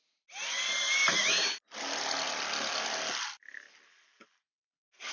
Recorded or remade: recorded